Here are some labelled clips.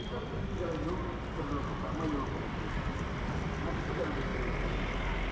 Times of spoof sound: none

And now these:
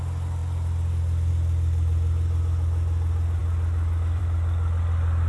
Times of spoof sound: none

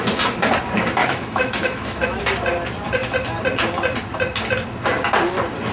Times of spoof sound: 1.0-2.2 (autoencoder, DAC-VAE)

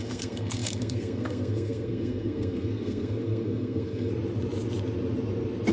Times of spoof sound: 0.0-4.1 (codec, SNAC)

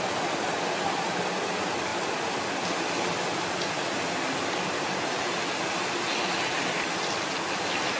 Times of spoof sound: none